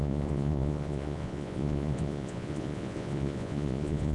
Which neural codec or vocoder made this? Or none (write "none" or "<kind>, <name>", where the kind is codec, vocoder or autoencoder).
vocoder, Vocos